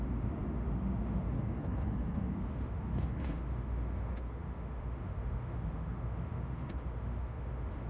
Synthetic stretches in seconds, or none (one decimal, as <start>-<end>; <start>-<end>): 0.0-7.9